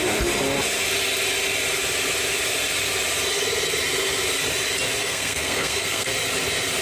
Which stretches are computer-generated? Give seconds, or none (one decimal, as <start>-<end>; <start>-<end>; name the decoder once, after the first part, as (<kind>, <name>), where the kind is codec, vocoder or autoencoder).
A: 5.0-6.1 (codec, SNAC)